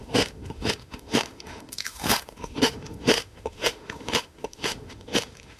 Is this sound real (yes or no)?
no